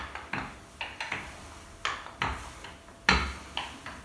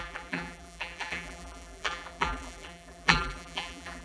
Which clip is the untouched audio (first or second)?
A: first